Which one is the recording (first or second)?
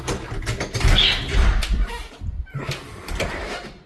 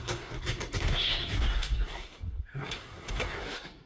first